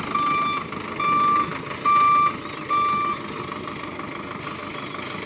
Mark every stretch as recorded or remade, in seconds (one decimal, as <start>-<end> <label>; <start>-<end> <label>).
0.0-5.3 recorded